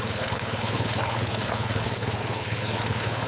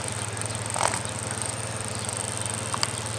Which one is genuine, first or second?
second